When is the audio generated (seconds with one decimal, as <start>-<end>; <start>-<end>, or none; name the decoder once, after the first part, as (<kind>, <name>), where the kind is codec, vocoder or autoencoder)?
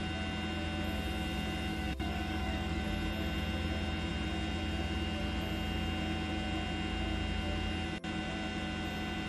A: 1.7-2.8 (codec, DAC)